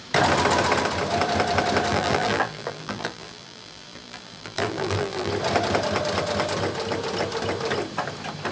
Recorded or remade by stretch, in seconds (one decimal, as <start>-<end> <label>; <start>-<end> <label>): 0.0-1.9 recorded; 1.9-5.3 remade; 5.3-8.5 recorded